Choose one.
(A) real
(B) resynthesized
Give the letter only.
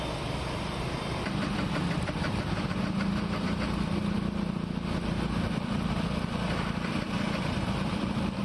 B